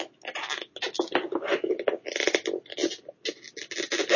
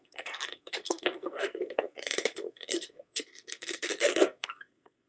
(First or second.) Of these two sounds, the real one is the first